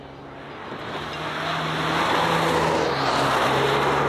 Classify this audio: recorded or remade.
recorded